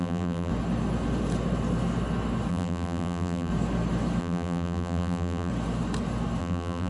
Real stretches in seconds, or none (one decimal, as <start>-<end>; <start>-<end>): 0.5-2.5; 3.5-4.2; 5.5-6.4

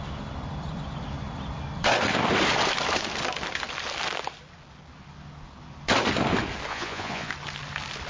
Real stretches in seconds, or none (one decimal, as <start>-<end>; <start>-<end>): 0.0-6.7; 7.3-8.1

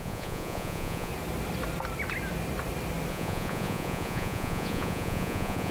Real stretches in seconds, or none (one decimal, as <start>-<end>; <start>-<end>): 1.1-3.1

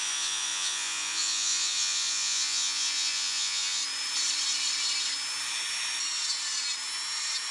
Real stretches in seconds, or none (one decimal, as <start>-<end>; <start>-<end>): 3.8-7.5